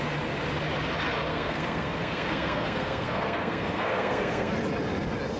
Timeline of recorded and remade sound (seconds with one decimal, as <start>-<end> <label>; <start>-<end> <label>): 0.0-1.3 recorded; 1.3-4.5 remade; 4.5-5.4 recorded